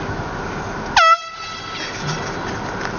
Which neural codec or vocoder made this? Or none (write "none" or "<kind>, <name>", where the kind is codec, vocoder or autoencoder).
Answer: none